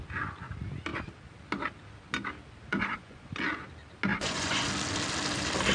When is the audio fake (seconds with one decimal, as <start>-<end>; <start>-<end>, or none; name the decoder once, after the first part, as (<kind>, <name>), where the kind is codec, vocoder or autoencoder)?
2.7-3.3 (vocoder, Vocos); 4.1-4.7